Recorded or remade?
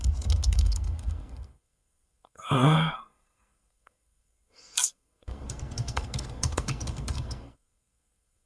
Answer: remade